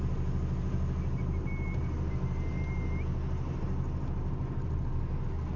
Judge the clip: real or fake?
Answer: real